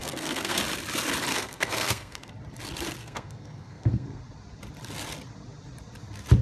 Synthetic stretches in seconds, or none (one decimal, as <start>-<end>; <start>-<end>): 0.0-0.6; 1.3-2.3; 3.0-4.2